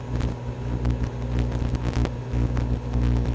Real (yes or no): yes